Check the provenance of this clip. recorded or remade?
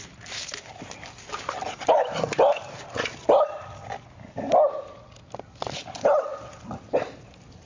recorded